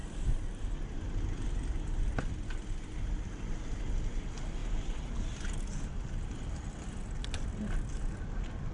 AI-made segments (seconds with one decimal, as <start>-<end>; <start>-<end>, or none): 0.0-1.2